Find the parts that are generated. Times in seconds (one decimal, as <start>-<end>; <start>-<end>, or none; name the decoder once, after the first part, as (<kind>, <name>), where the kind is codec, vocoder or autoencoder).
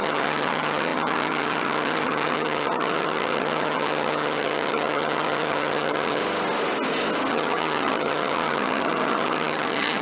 0.0-6.2 (vocoder, HiFi-GAN); 7.3-10.0